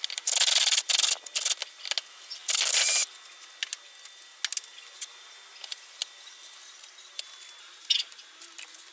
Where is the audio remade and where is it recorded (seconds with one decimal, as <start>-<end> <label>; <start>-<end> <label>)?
0.0-2.4 recorded; 2.4-3.1 remade; 3.1-8.9 recorded